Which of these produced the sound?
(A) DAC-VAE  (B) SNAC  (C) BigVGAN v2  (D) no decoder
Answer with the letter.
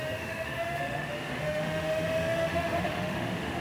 A